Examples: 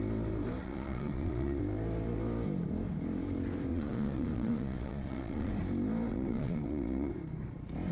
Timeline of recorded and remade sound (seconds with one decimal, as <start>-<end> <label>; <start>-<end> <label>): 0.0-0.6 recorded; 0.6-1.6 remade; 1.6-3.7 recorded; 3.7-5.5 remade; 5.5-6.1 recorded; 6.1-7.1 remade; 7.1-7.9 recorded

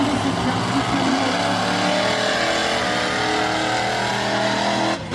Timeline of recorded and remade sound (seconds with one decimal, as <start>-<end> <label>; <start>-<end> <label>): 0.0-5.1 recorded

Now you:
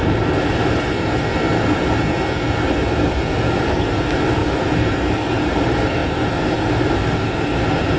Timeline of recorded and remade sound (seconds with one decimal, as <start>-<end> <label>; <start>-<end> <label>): 0.0-1.3 remade; 1.3-3.6 recorded; 3.6-4.4 remade; 4.4-4.9 recorded; 4.9-8.0 remade